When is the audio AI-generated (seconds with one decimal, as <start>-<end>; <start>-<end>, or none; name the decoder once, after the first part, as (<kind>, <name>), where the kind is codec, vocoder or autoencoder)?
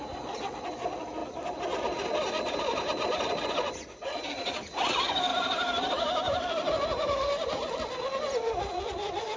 5.3-6.7 (vocoder, BigVGAN v2)